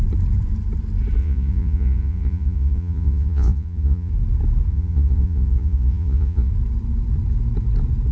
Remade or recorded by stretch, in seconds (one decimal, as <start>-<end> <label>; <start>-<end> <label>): 0.0-1.2 recorded; 1.2-4.1 remade; 4.1-4.7 recorded; 4.7-6.5 remade; 6.5-8.1 recorded